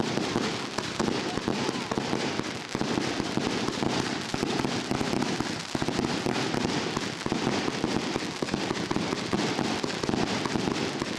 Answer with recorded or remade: recorded